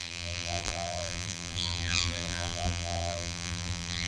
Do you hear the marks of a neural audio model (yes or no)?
yes